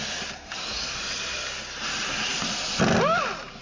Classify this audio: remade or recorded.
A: recorded